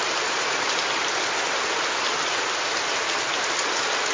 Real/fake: real